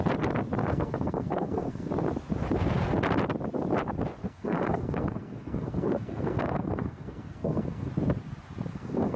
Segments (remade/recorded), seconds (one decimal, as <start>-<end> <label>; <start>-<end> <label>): 0.0-0.6 recorded; 0.6-1.9 remade; 1.9-4.2 recorded; 4.2-7.9 remade; 7.9-8.7 recorded; 8.7-9.2 remade